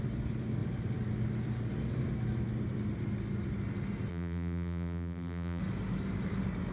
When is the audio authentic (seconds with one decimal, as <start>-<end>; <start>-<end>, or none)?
0.0-4.1; 5.6-6.7

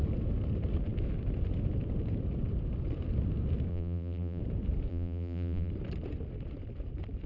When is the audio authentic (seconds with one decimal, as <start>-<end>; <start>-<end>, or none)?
0.0-3.7; 4.4-4.9; 5.7-7.3

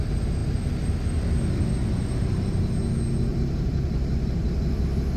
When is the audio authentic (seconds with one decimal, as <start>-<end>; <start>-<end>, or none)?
0.0-3.3; 4.6-5.2

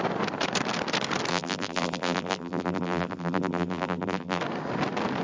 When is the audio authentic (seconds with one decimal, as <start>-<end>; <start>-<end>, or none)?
0.0-1.3; 4.4-5.2

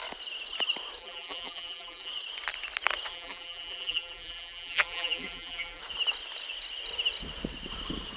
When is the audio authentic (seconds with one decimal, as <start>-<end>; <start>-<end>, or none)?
0.0-1.0; 2.1-3.1; 5.8-8.2

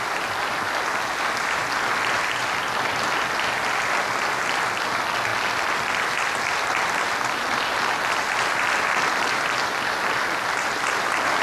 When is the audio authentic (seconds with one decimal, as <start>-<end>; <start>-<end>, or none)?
0.0-11.4

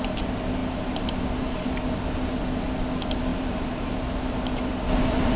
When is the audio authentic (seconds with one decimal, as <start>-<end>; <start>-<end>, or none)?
0.0-3.3; 3.9-5.4